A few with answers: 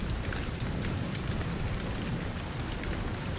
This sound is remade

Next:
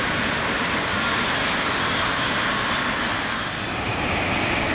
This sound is recorded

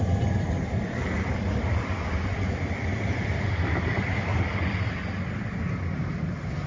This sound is recorded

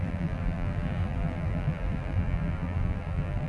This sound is remade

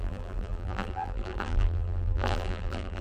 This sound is remade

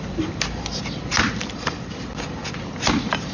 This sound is recorded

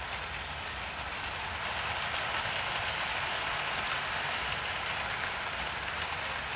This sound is recorded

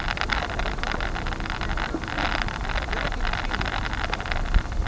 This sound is recorded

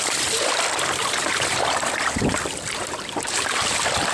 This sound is remade